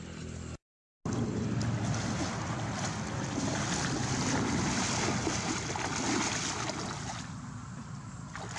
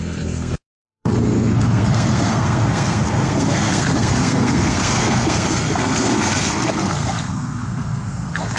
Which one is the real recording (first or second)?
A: first